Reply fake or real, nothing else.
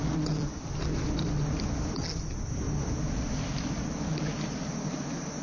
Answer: real